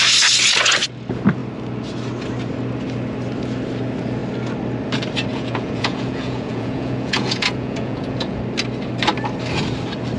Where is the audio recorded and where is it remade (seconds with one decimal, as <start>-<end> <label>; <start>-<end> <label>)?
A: 0.0-5.3 recorded; 5.3-8.4 remade; 8.4-10.2 recorded